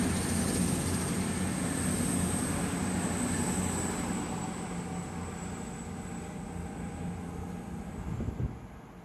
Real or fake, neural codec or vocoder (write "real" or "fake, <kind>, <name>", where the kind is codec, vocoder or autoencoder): real